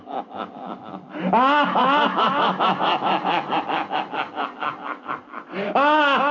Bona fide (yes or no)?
yes